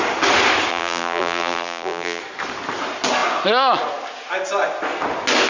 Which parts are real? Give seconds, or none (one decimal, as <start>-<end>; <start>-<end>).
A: 0.0-0.7; 2.2-5.5